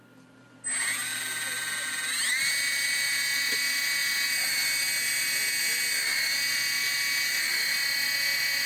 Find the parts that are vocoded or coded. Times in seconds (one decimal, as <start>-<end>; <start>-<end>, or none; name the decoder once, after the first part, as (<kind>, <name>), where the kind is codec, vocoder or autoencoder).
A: none